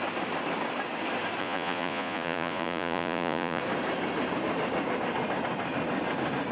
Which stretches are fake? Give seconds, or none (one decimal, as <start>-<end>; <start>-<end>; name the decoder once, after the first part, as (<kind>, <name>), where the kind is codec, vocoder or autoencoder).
1.4-3.6 (vocoder, Vocos)